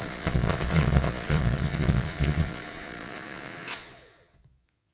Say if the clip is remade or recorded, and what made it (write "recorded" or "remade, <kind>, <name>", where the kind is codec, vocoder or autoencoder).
remade, vocoder, Vocos